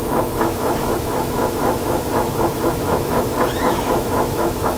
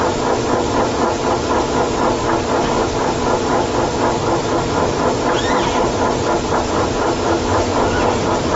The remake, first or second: first